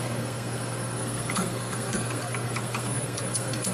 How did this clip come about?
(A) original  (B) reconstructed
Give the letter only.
B